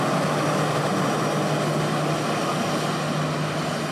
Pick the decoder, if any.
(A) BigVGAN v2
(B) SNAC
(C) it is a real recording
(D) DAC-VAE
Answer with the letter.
C